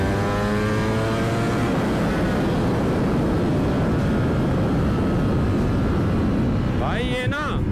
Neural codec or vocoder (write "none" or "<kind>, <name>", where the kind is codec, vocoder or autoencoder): none